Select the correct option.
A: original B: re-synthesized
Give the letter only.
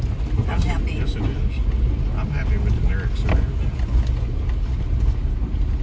A